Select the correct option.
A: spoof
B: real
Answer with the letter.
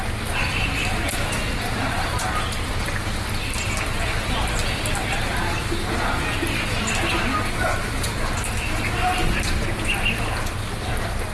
B